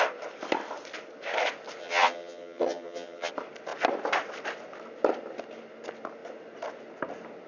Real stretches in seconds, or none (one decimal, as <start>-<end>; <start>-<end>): 0.0-1.8; 3.3-7.5